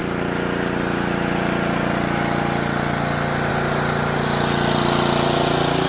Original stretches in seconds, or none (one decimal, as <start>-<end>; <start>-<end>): 0.0-5.9